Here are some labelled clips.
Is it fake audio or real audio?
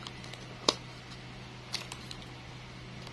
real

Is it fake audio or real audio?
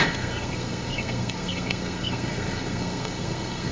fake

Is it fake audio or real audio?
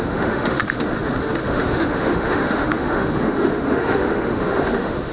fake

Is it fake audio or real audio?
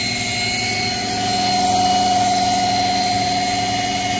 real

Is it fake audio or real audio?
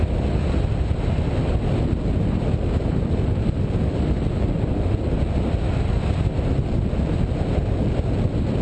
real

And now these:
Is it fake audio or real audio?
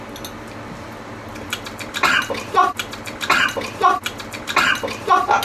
real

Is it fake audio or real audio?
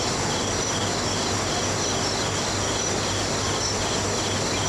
real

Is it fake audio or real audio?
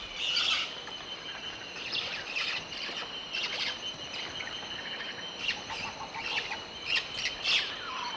fake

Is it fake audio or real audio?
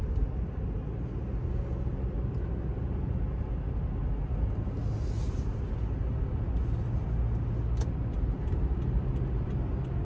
real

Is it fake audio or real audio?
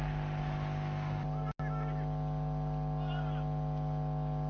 real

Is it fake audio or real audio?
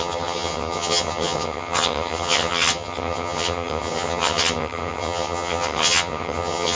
fake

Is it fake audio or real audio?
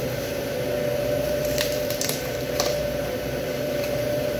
fake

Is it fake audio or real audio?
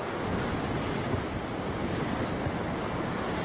real